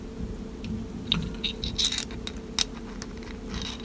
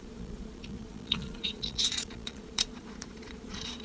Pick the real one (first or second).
first